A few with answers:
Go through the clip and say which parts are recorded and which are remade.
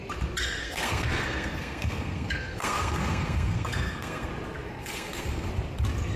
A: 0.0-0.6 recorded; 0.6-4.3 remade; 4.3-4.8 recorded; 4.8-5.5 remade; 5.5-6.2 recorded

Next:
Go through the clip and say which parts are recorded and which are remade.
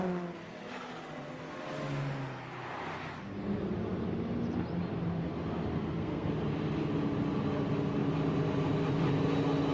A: 0.0-5.7 recorded; 5.7-6.3 remade; 6.3-9.7 recorded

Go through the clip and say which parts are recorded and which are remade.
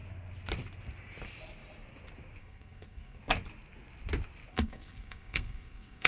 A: 0.0-2.4 recorded; 2.4-3.2 remade; 3.2-4.5 recorded; 4.5-6.1 remade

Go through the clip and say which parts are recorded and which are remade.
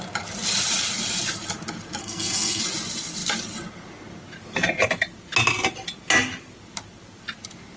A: 0.0-2.0 recorded; 2.0-2.6 remade; 2.6-7.8 recorded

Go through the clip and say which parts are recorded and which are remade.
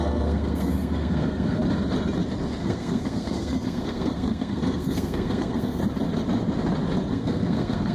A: 0.0-1.6 remade; 1.6-2.6 recorded; 2.6-5.8 remade; 5.8-7.1 recorded; 7.1-7.9 remade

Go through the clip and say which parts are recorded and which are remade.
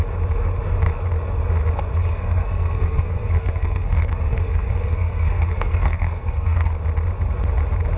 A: 0.0-2.1 recorded; 2.1-6.8 remade; 6.8-8.0 recorded